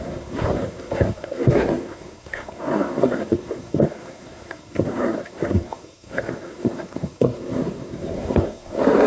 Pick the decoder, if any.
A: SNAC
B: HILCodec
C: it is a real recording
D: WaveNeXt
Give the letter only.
A